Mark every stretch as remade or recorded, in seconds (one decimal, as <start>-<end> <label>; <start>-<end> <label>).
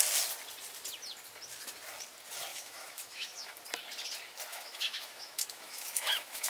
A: 0.0-2.5 recorded; 2.5-3.6 remade; 3.6-4.5 recorded; 4.5-6.5 remade